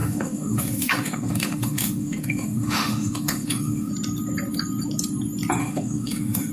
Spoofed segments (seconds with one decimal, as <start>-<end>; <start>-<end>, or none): 0.0-3.9; 5.6-6.5